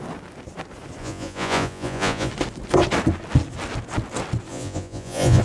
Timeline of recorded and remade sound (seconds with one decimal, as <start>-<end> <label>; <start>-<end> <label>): 0.0-1.0 recorded; 1.0-2.3 remade; 2.3-4.5 recorded; 4.5-5.4 remade